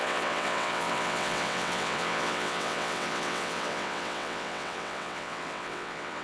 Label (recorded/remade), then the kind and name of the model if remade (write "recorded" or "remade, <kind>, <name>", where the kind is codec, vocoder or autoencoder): remade, vocoder, WaveNeXt